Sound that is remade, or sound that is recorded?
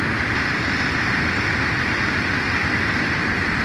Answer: recorded